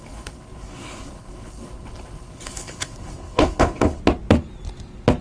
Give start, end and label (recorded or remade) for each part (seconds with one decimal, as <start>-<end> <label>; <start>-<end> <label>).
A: 0.0-4.0 remade; 4.0-5.2 recorded